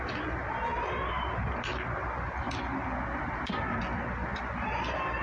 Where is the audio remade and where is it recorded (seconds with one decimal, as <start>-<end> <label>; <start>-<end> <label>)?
0.0-5.2 recorded